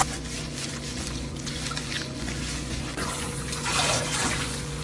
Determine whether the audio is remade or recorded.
remade